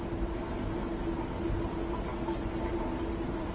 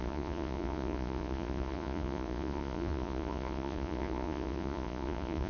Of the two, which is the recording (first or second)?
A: first